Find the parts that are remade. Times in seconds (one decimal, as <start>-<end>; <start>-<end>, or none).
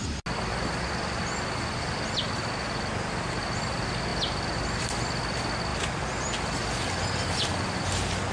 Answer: none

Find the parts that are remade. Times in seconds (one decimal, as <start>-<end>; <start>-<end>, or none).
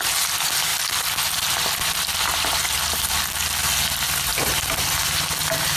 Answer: 4.3-5.0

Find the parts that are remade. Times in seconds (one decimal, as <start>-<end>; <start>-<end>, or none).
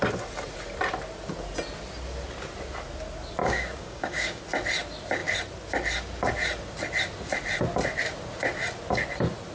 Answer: 3.4-4.4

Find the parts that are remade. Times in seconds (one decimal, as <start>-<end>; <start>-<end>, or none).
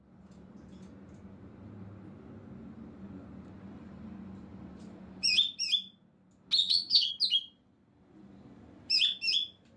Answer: 6.6-7.1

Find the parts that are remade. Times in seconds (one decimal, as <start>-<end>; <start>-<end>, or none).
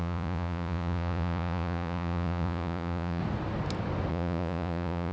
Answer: 0.0-3.2; 4.1-5.1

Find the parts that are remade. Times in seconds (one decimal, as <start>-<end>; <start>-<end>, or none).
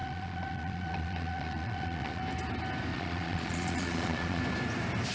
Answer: 0.0-2.2; 2.9-4.4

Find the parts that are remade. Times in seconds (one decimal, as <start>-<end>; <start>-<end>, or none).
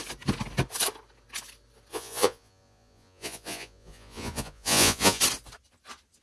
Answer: 1.9-5.2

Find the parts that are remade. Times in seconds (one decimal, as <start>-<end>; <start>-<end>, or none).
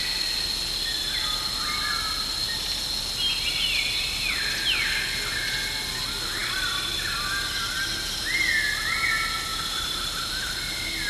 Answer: none